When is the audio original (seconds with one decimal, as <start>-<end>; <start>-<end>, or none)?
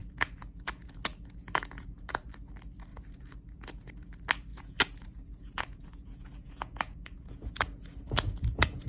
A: 2.3-2.9; 3.9-4.5